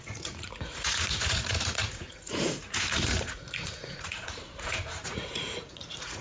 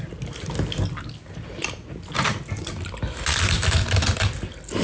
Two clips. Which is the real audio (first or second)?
second